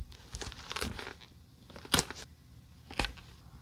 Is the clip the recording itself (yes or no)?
yes